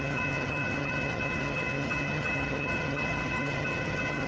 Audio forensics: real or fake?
fake